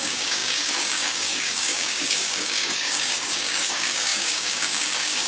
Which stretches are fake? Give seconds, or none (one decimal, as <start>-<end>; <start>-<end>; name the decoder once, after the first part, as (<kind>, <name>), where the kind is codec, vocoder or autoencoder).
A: 0.0-5.3 (codec, DAC)